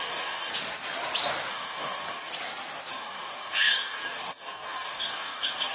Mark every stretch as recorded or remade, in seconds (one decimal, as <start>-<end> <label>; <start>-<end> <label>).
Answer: 0.0-0.5 remade; 0.5-1.5 recorded; 1.5-2.3 remade; 2.3-2.9 recorded; 2.9-5.7 remade